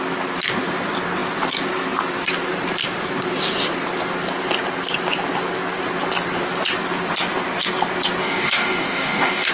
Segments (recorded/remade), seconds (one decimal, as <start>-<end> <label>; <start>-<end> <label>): 0.0-8.2 recorded; 8.2-9.5 remade